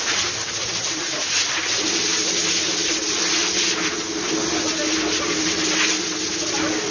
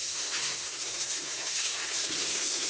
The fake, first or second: second